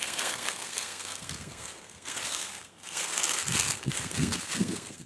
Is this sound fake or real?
fake